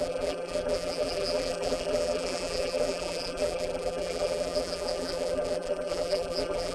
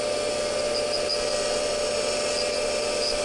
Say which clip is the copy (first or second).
first